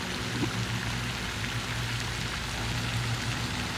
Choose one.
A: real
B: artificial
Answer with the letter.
A